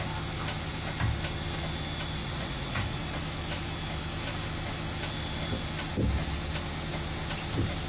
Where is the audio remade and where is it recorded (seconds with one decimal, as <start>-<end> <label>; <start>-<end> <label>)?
0.0-2.2 recorded; 2.2-3.0 remade; 3.0-7.9 recorded